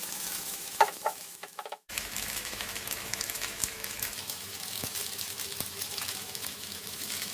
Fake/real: fake